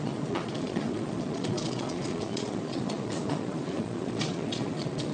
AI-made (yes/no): yes